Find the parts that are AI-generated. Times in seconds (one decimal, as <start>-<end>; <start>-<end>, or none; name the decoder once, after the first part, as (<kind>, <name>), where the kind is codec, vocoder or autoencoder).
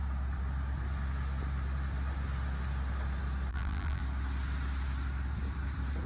3.5-4.0 (vocoder, BigVGAN v2)